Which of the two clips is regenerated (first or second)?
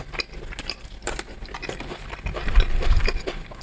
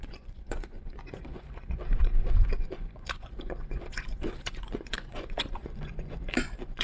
second